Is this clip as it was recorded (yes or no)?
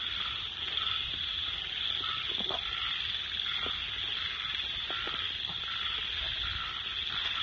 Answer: yes